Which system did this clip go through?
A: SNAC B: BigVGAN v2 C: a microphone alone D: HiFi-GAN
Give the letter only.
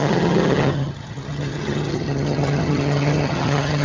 D